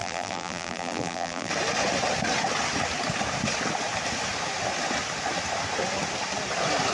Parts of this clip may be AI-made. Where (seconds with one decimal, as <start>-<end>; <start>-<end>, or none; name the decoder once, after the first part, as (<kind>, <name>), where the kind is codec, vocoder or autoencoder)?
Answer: 0.0-1.5 (vocoder, BigVGAN v2)